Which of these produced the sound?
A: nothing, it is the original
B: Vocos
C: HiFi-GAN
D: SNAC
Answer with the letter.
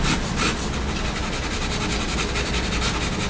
A